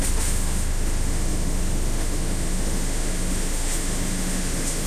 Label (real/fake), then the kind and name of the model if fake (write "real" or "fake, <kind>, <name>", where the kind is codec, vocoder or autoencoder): fake, autoencoder, DAC-VAE